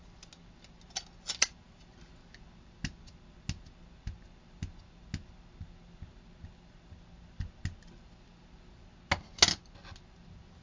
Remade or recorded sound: recorded